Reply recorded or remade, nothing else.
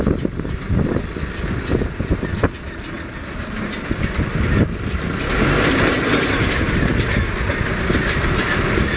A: recorded